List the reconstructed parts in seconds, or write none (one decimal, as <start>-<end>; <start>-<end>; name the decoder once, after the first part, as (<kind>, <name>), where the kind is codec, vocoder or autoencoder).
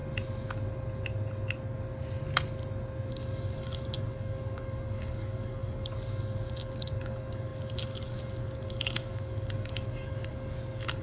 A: 3.1-11.0 (codec, DAC)